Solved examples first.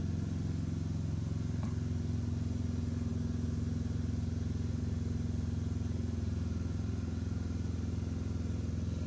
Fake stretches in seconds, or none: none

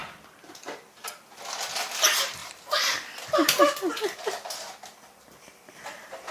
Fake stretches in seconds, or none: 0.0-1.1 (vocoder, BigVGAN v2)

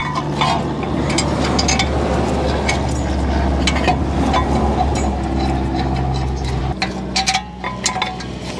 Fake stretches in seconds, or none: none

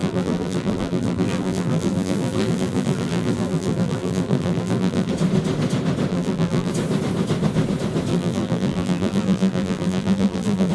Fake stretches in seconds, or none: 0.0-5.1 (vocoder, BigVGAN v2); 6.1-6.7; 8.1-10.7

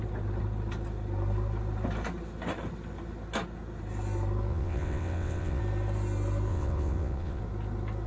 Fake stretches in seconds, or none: 4.5-5.6 (vocoder, WaveNeXt); 6.5-7.4